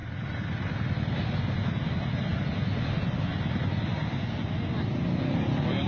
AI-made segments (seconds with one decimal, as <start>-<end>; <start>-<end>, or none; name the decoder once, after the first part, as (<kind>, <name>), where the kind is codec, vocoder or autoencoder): none

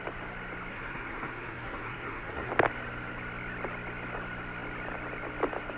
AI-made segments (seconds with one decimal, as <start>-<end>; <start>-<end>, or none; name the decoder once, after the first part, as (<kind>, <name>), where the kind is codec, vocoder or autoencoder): 0.7-2.5 (codec, SNAC)